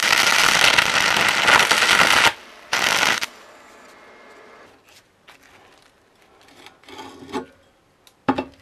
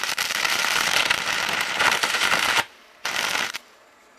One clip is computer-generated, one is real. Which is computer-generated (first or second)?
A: second